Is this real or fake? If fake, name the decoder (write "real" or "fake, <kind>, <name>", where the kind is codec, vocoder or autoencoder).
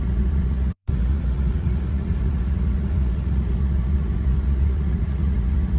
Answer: fake, vocoder, Vocos